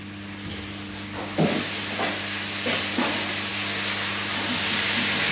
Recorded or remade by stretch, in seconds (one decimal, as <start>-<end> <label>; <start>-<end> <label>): 0.0-5.3 recorded